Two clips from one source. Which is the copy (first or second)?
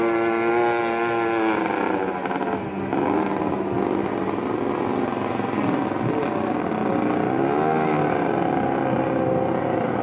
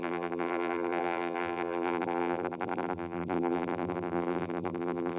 second